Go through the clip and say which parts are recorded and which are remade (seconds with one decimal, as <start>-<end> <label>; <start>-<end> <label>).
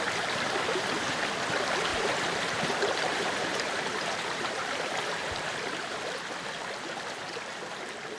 0.0-0.7 recorded; 0.7-1.2 remade; 1.2-1.9 recorded; 1.9-6.0 remade; 6.0-8.2 recorded